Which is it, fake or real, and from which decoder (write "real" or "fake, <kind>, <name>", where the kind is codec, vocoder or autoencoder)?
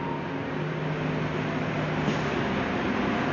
real